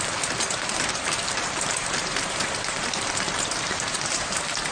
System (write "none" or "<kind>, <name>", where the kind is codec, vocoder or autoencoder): vocoder, BigVGAN v2